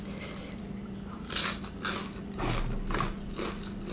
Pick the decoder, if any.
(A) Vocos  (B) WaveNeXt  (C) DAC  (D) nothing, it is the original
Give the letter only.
D